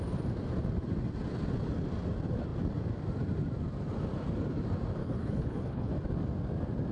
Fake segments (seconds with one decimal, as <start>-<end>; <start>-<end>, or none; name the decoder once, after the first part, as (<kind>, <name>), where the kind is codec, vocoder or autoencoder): 5.0-5.9 (codec, HILCodec)